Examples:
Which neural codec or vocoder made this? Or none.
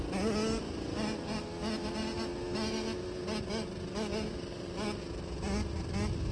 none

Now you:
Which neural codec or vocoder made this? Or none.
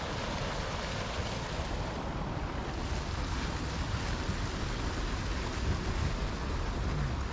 none